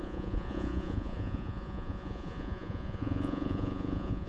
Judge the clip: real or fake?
fake